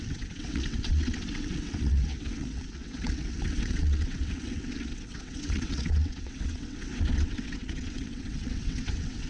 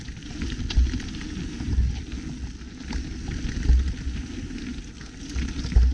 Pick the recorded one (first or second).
second